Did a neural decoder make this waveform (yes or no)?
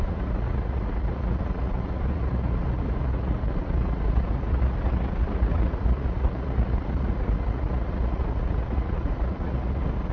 yes